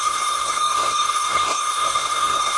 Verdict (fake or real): fake